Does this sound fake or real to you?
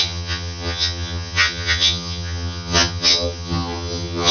fake